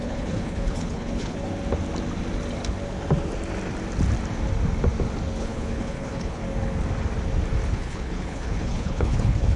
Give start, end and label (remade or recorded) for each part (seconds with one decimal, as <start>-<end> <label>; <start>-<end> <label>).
0.0-1.5 remade; 1.5-5.4 recorded; 5.4-6.4 remade; 6.4-7.7 recorded; 7.7-9.6 remade